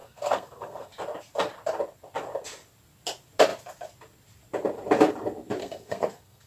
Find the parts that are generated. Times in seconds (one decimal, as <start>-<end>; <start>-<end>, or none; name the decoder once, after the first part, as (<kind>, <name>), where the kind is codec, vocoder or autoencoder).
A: 0.0-0.9 (codec, SNAC); 5.6-6.5